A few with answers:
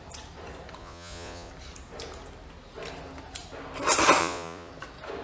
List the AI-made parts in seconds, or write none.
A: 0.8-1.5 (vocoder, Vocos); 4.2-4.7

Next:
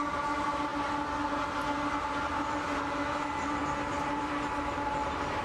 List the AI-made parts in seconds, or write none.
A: 0.0-0.7 (vocoder, BigVGAN v2); 3.2-3.6; 4.2-5.4

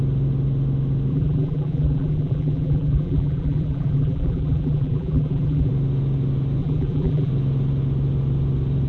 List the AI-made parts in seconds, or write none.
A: 1.1-5.7 (vocoder, BigVGAN v2); 6.6-7.3

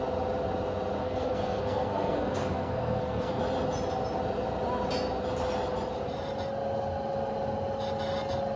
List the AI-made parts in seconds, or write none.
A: 1.0-3.4 (codec, SNAC)

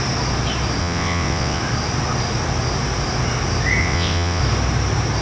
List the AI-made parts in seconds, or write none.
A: 0.8-1.6 (vocoder, WaveNeXt); 3.8-4.4

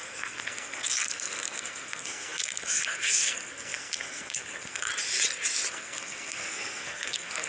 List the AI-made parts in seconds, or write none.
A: 0.0-4.9 (codec, SNAC); 5.7-7.5